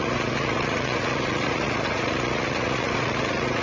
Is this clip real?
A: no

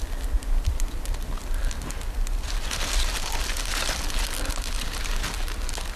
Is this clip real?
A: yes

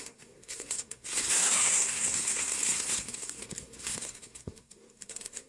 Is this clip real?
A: no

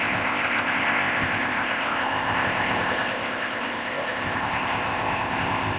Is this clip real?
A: no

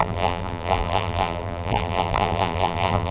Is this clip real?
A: no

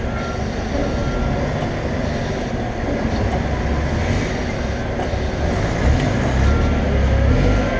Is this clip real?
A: yes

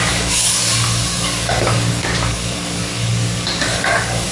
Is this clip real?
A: no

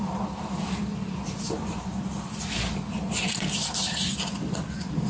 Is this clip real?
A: no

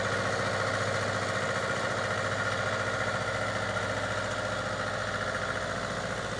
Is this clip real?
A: yes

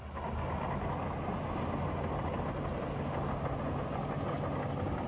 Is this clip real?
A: yes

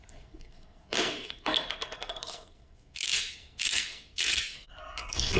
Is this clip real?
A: no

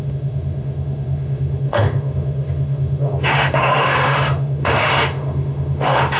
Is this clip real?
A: no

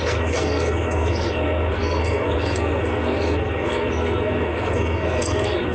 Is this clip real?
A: no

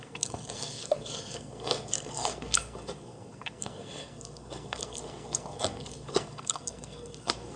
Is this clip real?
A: no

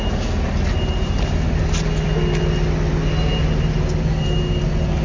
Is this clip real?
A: yes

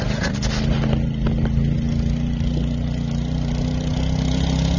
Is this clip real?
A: yes